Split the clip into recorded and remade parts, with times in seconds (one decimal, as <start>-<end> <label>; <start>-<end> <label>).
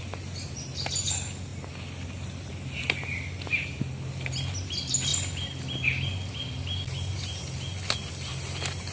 0.0-8.9 recorded